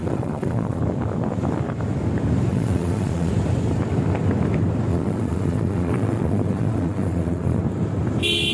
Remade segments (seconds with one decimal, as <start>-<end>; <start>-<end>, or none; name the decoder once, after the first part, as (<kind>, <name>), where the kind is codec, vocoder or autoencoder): 0.0-0.8 (vocoder, Vocos); 2.5-3.3; 4.9-7.6